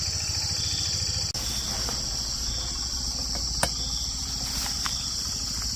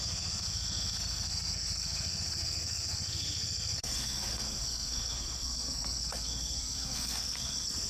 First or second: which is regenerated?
second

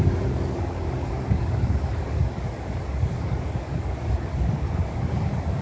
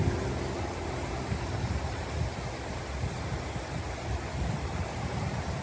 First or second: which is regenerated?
first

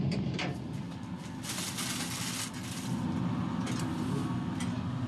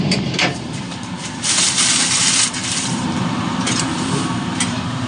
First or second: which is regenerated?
second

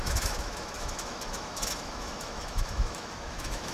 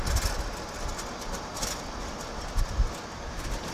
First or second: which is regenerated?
first